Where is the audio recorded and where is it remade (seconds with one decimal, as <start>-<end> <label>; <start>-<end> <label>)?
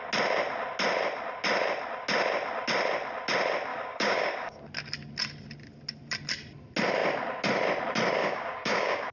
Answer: 0.0-3.7 recorded; 3.7-4.6 remade; 4.6-8.2 recorded; 8.2-9.1 remade